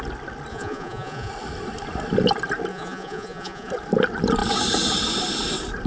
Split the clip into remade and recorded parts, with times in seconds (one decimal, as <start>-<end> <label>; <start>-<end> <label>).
0.0-0.5 recorded; 0.5-1.3 remade; 1.3-2.7 recorded; 2.7-3.7 remade; 3.7-5.9 recorded